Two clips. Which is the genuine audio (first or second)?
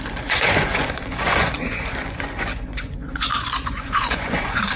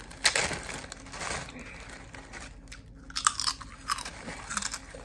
second